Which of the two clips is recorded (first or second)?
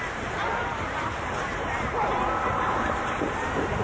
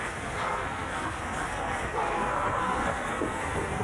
first